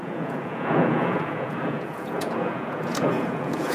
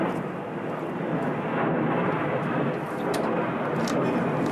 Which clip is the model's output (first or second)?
first